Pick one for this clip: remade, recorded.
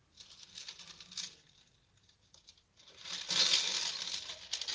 recorded